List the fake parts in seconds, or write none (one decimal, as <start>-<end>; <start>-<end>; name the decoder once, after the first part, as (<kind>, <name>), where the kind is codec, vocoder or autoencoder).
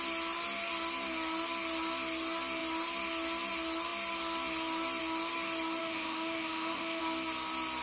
5.8-7.0 (autoencoder, DAC-VAE)